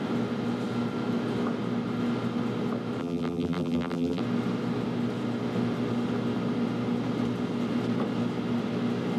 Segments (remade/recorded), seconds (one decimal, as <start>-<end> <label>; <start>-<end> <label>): 0.0-3.0 recorded; 3.0-4.2 remade; 4.2-9.2 recorded